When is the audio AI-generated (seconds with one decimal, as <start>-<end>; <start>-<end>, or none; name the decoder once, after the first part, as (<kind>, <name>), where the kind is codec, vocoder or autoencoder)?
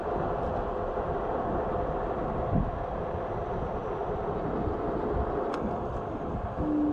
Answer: none